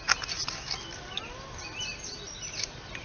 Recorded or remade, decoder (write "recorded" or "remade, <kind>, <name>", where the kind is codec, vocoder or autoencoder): recorded